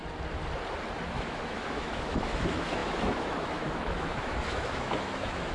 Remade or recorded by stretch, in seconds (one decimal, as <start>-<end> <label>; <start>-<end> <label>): 0.0-1.1 recorded; 1.1-5.5 remade